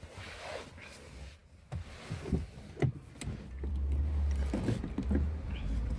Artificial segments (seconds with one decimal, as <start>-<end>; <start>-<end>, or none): none

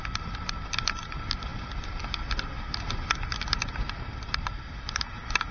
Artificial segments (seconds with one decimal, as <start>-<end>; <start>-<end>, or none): none

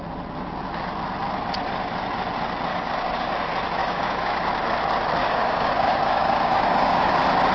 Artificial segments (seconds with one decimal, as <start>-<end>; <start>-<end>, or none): 2.7-3.3; 3.8-4.4; 5.2-7.1

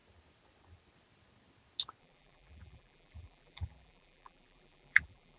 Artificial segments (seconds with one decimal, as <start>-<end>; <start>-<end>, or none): 2.0-5.4

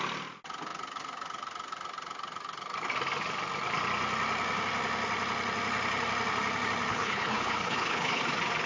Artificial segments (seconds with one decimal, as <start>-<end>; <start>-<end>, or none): 6.9-8.2

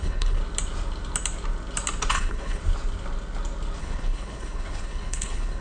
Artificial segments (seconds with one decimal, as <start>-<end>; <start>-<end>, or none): 0.0-0.4; 2.1-2.6; 3.8-5.6